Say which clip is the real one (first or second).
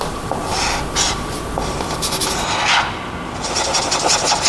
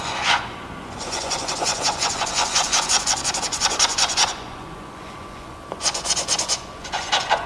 first